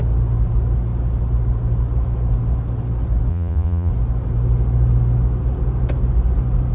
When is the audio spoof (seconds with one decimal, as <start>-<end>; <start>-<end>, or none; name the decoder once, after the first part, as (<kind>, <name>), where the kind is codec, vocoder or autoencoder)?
3.3-3.9 (vocoder, Vocos)